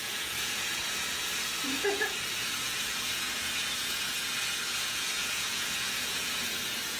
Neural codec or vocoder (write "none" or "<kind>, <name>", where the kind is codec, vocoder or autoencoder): vocoder, Vocos